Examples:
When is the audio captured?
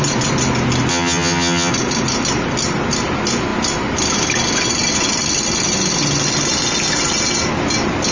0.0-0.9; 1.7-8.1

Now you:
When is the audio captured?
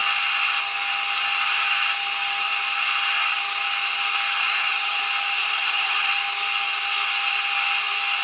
0.0-4.4; 5.0-5.4; 6.1-8.2